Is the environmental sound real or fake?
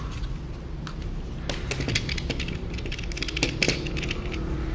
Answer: real